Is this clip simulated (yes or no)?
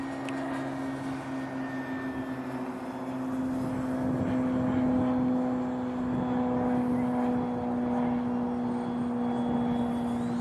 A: no